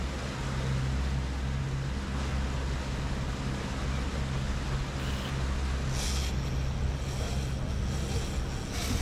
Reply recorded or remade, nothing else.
recorded